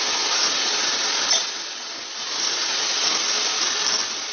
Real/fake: real